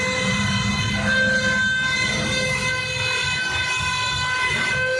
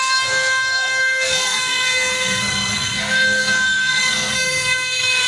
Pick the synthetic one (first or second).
second